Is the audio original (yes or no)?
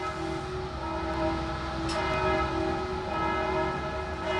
yes